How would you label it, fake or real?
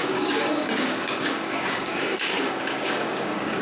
fake